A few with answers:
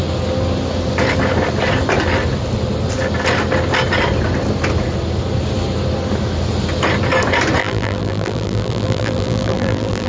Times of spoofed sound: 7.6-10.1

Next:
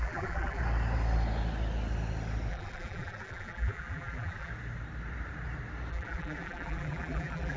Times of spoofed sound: 0.0-0.6; 2.5-4.5; 5.9-7.6

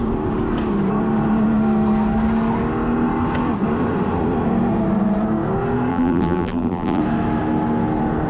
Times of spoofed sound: 5.9-7.0

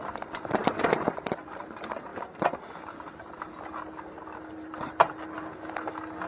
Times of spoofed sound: 0.0-2.1; 3.6-6.3